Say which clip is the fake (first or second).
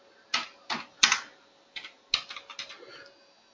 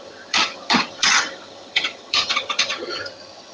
second